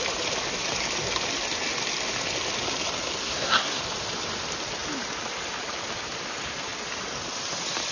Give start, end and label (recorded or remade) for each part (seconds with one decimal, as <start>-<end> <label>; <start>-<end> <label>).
0.0-3.2 recorded; 3.2-3.8 remade; 3.8-7.9 recorded